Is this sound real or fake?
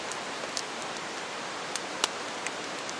real